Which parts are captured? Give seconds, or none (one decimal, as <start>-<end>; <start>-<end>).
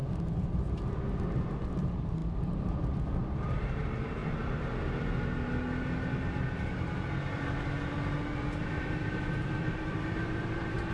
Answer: 0.0-1.3; 4.2-8.6